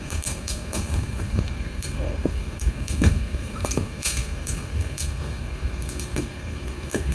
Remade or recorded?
remade